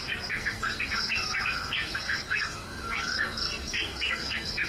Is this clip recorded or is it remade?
remade